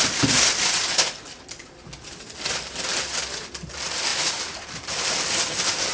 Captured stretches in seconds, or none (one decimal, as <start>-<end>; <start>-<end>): 0.0-5.9